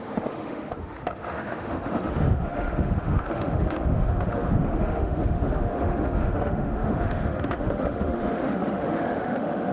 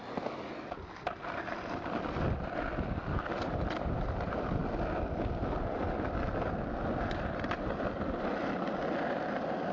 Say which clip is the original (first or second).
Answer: second